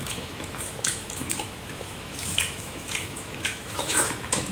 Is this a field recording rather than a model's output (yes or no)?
no